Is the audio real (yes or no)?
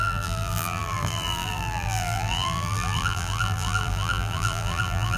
no